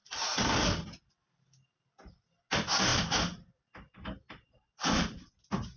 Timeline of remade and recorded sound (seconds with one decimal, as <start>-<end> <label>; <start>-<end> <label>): 0.0-0.5 remade; 0.5-5.8 recorded